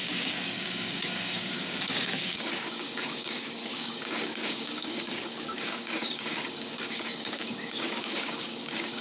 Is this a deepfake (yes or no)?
yes